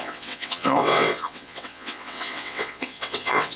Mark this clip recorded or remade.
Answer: remade